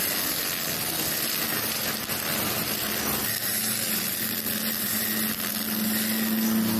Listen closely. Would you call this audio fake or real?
real